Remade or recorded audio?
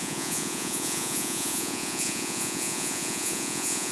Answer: remade